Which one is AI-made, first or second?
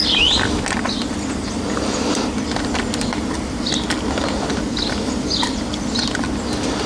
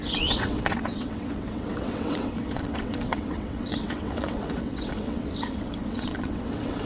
second